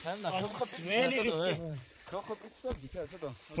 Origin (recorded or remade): remade